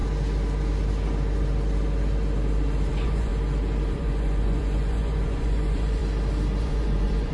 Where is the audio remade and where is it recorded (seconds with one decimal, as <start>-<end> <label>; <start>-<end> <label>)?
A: 0.0-2.9 recorded; 2.9-3.3 remade; 3.3-3.9 recorded; 3.9-6.0 remade; 6.0-6.6 recorded; 6.6-7.3 remade